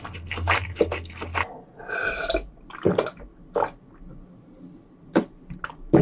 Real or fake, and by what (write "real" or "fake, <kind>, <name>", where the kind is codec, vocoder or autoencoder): real